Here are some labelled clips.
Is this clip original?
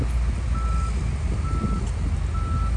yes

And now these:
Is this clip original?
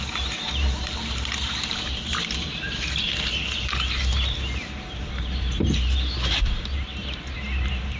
no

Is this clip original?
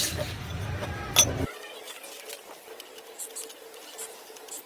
yes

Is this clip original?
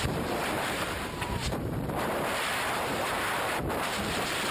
no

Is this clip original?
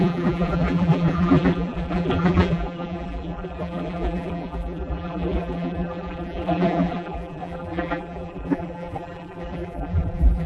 no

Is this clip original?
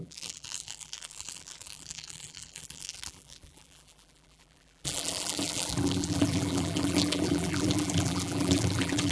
no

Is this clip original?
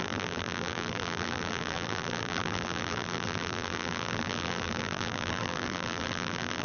no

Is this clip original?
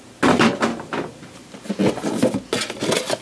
yes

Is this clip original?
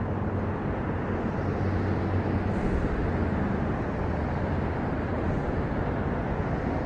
yes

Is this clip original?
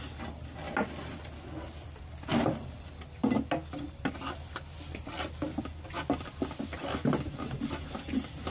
yes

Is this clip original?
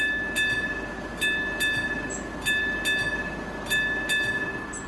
yes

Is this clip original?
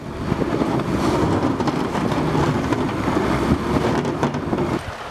yes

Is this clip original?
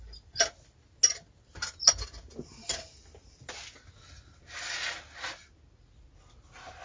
yes